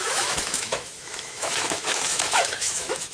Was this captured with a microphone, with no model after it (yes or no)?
no